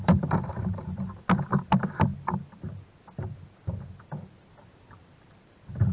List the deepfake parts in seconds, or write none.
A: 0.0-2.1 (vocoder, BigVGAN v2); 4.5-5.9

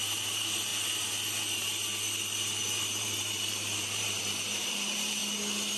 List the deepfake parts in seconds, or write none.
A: 0.0-0.7 (vocoder, BigVGAN v2); 3.0-5.2

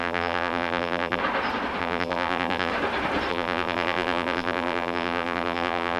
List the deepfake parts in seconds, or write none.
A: 0.0-1.2 (vocoder, BigVGAN v2); 1.8-2.7; 3.3-6.0

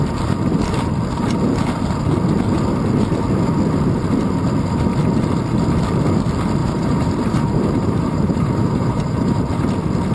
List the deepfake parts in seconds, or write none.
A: 6.6-9.4 (vocoder, BigVGAN v2)

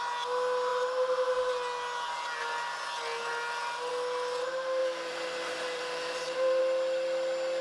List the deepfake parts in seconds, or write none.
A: 4.8-6.6 (vocoder, BigVGAN v2)

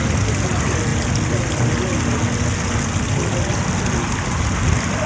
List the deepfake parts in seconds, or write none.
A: none

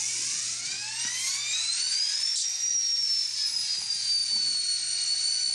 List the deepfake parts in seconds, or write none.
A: 1.6-2.7 (vocoder, BigVGAN v2)